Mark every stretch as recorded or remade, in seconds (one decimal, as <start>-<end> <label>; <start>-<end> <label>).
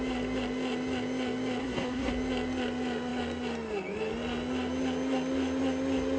0.0-1.6 recorded; 1.6-2.1 remade; 2.1-6.2 recorded